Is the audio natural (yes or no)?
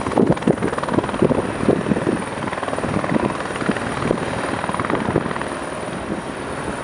yes